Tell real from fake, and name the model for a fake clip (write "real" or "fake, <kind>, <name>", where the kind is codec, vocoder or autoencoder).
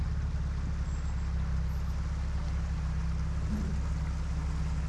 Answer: real